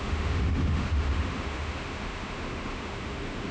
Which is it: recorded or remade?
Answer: remade